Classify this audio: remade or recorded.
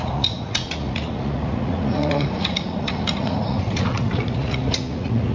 remade